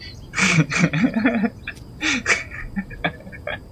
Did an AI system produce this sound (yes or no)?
yes